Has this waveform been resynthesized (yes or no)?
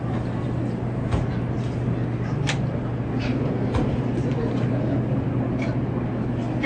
no